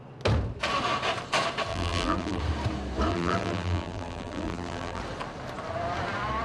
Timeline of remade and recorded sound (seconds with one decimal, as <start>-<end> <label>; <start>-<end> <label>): 0.0-1.7 recorded; 1.7-2.4 remade; 2.4-3.1 recorded; 3.1-5.0 remade; 5.0-6.4 recorded